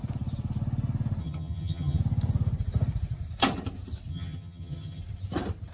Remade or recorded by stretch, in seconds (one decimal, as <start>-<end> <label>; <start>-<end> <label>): 0.0-1.2 recorded; 1.2-2.0 remade; 2.0-4.1 recorded; 4.1-5.0 remade; 5.0-5.7 recorded